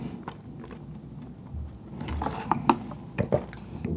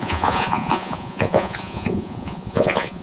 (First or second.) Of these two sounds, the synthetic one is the second